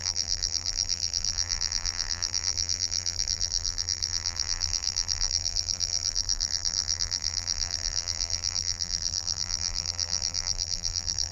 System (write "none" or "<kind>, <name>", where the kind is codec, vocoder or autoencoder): vocoder, BigVGAN v2